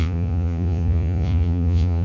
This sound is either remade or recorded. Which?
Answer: remade